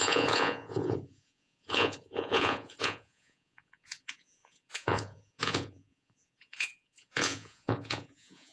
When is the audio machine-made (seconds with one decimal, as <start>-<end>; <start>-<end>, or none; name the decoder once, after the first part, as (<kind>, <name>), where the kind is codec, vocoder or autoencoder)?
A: 0.0-8.5 (vocoder, Vocos)